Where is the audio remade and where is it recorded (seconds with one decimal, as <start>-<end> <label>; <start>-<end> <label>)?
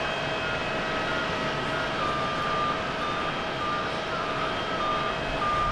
0.0-5.7 recorded